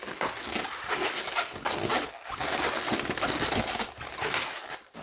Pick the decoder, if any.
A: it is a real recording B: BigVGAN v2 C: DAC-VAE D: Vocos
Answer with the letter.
A